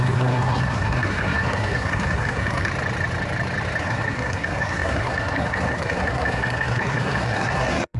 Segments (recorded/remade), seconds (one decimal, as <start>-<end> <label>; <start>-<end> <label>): 0.0-2.7 remade; 2.7-3.8 recorded; 3.8-8.0 remade